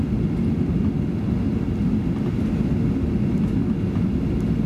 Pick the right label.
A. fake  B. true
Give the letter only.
B